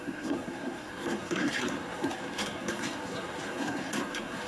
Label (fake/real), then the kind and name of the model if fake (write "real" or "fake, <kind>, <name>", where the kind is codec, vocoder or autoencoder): fake, codec, SNAC